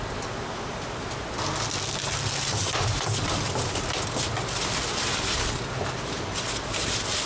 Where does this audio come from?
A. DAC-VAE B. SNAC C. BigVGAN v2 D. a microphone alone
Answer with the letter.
D